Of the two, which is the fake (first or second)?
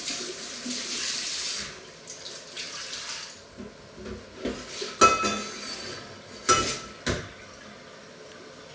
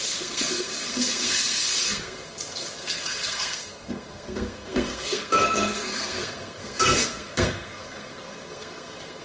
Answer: second